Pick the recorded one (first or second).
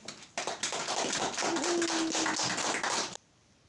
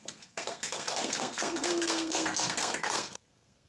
first